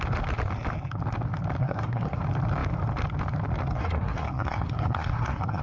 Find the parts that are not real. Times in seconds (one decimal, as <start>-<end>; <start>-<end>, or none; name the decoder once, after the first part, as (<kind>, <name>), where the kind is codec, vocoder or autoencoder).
1.6-2.2 (codec, SNAC); 3.7-5.6